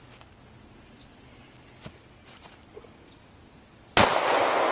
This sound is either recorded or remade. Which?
recorded